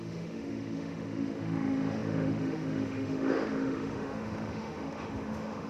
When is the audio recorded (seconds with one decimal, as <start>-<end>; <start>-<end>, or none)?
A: none